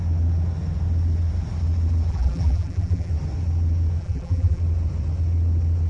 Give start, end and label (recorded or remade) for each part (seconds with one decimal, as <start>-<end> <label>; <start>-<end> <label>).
0.0-2.1 recorded; 2.1-3.1 remade; 3.1-4.0 recorded; 4.0-4.6 remade; 4.6-5.9 recorded